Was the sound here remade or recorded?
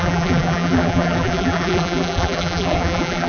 remade